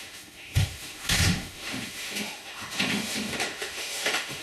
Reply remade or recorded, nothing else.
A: remade